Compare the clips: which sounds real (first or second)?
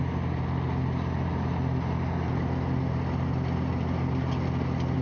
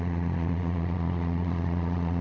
first